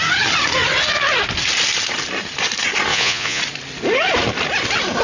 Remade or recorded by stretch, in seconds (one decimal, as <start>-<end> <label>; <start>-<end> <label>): 0.0-2.9 recorded; 2.9-3.4 remade; 3.4-5.0 recorded